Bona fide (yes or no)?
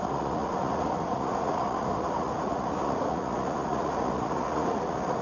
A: no